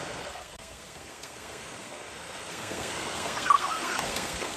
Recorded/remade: remade